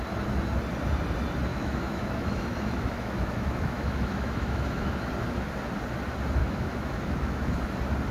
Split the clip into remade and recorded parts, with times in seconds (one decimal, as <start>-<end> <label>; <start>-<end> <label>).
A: 0.0-1.5 recorded; 1.5-5.1 remade; 5.1-6.4 recorded; 6.4-7.6 remade; 7.6-8.1 recorded